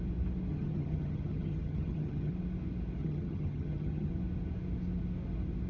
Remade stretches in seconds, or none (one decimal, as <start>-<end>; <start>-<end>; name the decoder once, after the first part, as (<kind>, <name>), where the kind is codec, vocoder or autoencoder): 0.5-2.3 (vocoder, HiFi-GAN); 3.0-4.1